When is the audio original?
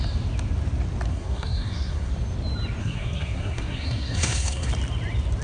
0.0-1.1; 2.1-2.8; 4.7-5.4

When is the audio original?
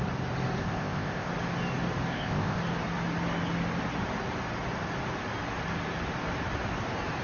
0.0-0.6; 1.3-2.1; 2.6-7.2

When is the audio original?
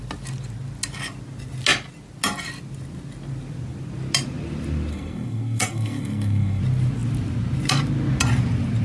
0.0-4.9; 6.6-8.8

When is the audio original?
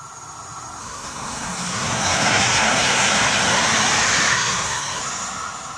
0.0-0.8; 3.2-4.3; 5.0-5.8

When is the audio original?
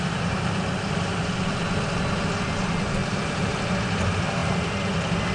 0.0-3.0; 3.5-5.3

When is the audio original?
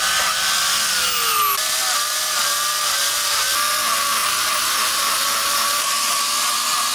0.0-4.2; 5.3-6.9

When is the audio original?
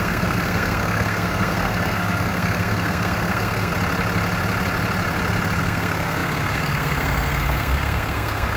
3.7-5.6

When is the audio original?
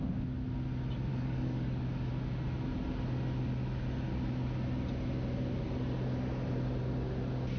0.0-1.1; 2.1-7.6